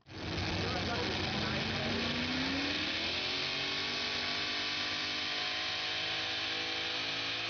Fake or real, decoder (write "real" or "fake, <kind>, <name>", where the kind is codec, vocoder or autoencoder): real